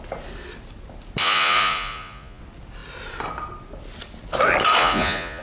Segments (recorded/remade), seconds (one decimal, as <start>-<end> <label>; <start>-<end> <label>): 0.0-1.2 recorded; 1.2-2.4 remade; 2.4-4.8 recorded; 4.8-5.4 remade